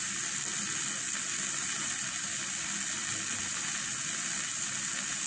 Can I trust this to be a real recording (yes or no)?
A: yes